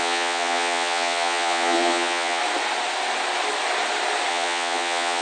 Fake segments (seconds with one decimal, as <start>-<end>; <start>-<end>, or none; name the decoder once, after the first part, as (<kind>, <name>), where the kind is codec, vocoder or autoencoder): 0.0-2.4 (vocoder, Vocos); 4.3-5.2